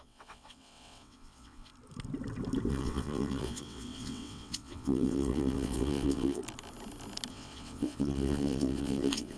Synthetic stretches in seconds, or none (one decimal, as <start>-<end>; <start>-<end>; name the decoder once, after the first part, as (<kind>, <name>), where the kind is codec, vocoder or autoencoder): 0.0-1.7 (vocoder, WaveNeXt); 2.7-6.4; 7.3-9.4